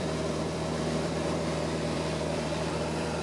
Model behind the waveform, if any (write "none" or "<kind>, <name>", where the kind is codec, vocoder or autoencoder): vocoder, BigVGAN v2